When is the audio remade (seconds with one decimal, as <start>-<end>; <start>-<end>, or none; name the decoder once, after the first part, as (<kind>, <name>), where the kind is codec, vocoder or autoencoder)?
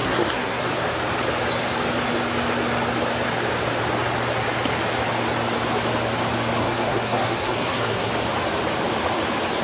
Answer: 0.0-0.6 (codec, SNAC); 6.6-8.1